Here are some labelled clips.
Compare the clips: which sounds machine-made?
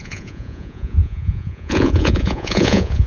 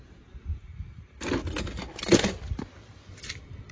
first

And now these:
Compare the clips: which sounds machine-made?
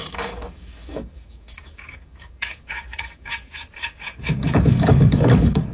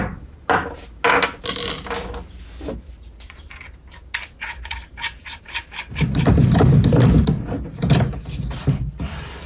first